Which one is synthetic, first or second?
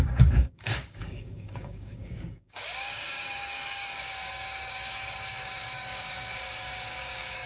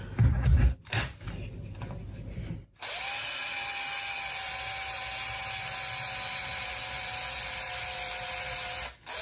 first